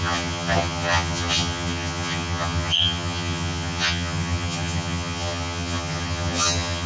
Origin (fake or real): fake